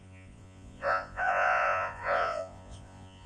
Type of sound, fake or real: fake